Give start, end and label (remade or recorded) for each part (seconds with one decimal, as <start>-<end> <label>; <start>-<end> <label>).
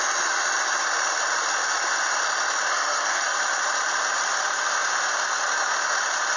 0.0-2.7 recorded; 2.7-3.2 remade; 3.2-6.4 recorded